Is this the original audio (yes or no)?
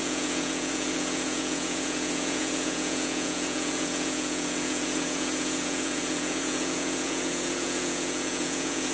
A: no